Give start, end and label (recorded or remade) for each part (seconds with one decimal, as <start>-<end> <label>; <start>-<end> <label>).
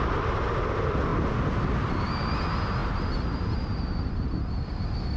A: 0.0-5.2 recorded